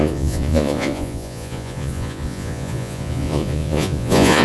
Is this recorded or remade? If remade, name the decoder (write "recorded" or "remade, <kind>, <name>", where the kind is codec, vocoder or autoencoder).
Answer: remade, vocoder, Vocos